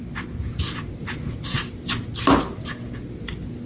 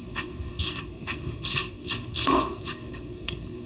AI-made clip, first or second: second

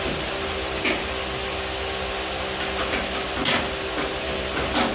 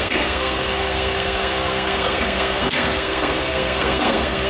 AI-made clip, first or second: second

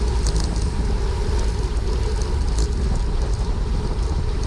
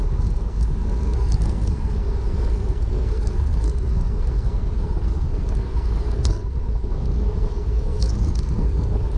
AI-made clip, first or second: second